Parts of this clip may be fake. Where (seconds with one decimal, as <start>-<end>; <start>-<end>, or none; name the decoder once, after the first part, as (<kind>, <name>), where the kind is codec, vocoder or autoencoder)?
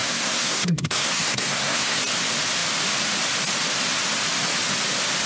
0.0-2.0 (codec, SNAC)